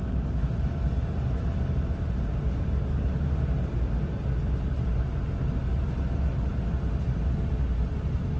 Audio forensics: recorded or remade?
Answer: recorded